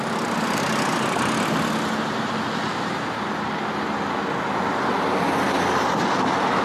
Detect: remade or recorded recorded